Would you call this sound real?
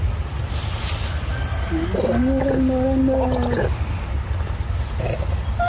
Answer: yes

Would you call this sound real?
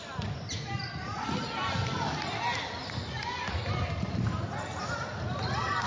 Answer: yes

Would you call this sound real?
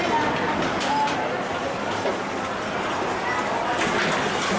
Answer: yes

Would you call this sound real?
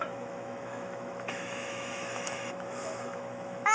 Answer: no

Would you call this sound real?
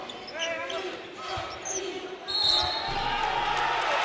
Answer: yes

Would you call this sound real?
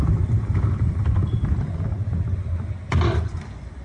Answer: no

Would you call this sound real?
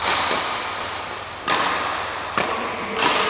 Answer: yes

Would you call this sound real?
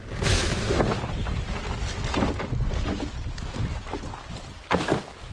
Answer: yes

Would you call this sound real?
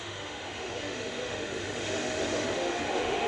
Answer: no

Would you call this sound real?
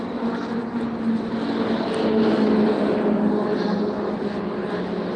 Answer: yes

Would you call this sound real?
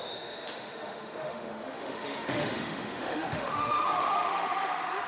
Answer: no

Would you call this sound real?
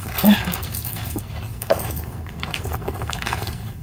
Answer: no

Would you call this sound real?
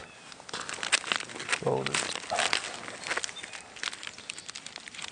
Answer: yes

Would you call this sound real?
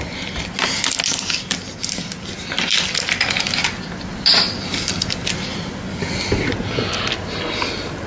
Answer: yes